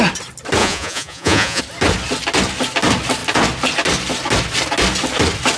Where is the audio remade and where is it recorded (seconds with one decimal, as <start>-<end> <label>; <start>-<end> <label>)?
0.0-0.6 recorded; 0.6-1.6 remade; 1.6-5.6 recorded